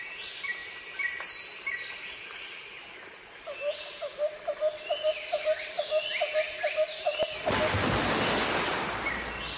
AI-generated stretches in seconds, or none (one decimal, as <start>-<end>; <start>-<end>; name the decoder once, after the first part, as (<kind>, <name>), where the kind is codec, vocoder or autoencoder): none